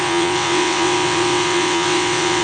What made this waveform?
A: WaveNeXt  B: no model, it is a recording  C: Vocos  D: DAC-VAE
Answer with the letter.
A